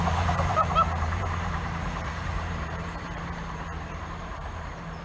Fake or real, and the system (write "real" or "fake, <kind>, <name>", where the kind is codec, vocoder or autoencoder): fake, vocoder, BigVGAN v2